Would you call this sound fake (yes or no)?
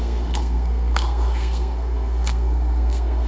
yes